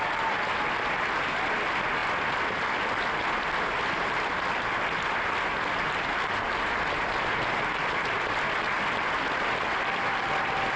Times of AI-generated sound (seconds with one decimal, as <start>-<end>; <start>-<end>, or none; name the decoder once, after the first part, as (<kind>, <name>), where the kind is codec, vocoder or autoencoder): none